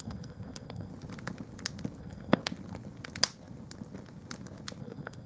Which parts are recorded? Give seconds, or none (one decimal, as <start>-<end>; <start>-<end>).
0.9-2.0; 2.4-4.8

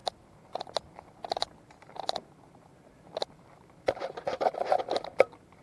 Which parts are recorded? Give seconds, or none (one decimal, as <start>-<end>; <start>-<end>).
0.0-5.6

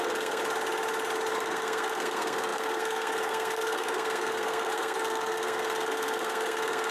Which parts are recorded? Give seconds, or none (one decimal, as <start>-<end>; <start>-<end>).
0.4-1.3

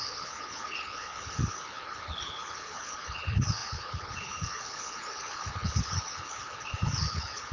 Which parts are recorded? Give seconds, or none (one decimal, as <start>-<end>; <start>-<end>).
none

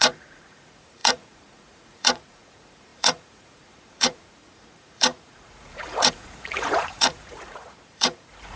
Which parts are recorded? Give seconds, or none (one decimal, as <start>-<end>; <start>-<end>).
none